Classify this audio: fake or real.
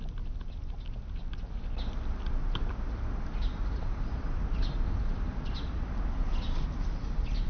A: real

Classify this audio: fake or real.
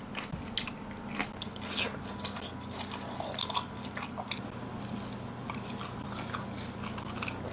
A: real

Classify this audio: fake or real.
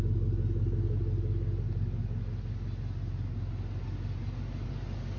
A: real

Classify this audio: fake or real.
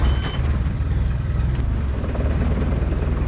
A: real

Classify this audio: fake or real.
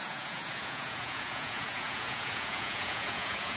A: fake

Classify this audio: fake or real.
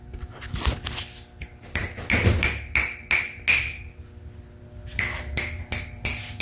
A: real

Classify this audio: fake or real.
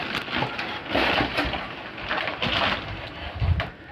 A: real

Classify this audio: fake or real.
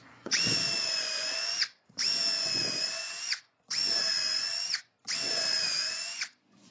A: fake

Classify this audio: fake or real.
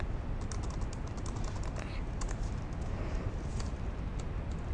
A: real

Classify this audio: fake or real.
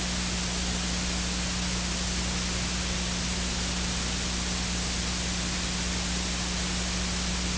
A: real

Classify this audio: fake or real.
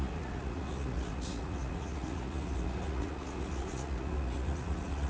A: fake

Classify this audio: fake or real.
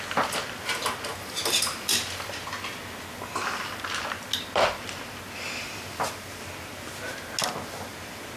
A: real